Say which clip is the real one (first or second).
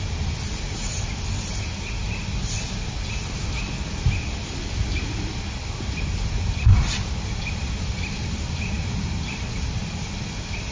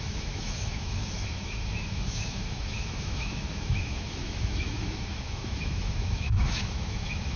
first